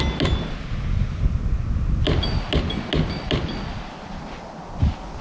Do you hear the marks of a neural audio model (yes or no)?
no